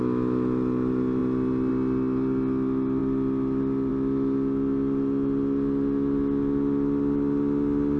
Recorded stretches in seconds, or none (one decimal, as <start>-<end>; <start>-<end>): 0.0-8.0